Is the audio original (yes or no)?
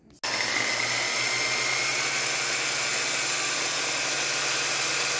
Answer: yes